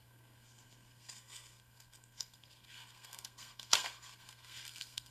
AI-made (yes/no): yes